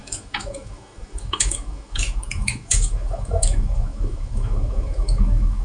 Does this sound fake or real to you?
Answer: fake